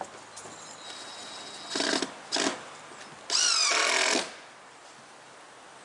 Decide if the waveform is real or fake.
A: real